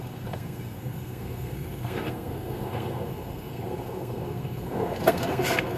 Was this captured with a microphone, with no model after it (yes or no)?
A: no